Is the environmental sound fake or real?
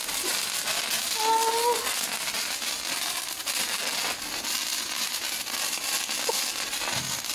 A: real